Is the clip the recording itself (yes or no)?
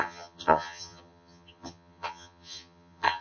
no